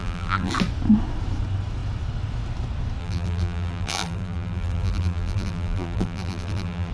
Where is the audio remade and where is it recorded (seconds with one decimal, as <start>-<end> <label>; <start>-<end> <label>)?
0.0-0.5 remade; 0.5-3.0 recorded; 3.0-6.9 remade